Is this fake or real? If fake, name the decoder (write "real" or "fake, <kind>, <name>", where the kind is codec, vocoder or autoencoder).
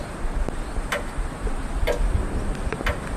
real